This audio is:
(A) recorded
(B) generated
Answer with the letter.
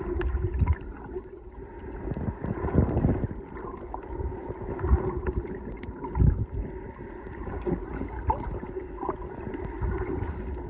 A